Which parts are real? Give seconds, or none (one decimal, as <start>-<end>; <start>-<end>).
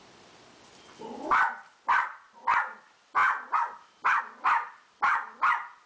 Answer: 0.0-5.9